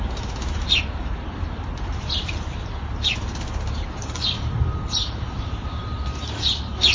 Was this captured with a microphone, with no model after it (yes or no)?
no